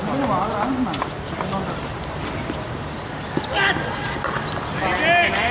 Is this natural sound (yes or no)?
yes